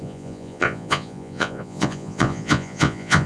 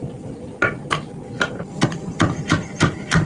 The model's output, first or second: first